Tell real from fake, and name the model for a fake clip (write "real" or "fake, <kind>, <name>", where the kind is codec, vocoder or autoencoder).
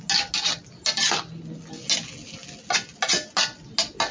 real